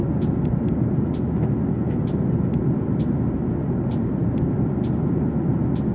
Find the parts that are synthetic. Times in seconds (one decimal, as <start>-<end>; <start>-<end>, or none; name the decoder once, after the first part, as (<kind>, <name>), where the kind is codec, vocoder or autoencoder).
none